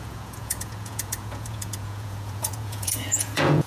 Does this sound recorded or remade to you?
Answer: remade